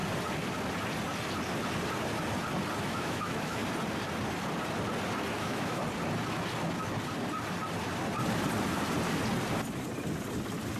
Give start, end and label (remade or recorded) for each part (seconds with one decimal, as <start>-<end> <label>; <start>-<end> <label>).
0.0-2.8 recorded; 2.8-3.6 remade; 3.6-5.3 recorded; 5.3-5.8 remade; 5.8-10.8 recorded